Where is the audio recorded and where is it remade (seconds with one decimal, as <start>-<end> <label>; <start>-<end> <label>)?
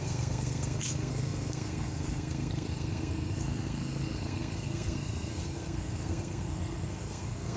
0.0-7.6 remade